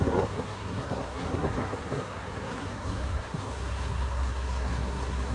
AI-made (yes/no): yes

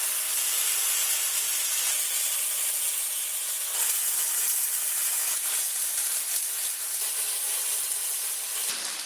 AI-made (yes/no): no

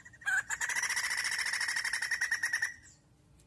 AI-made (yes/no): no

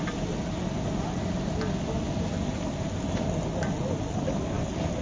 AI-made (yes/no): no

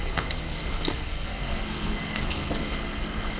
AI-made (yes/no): yes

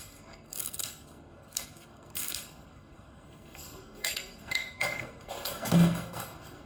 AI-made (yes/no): yes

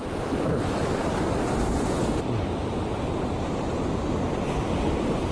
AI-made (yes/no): no